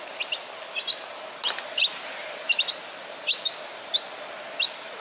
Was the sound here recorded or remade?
recorded